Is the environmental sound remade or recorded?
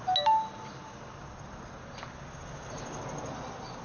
recorded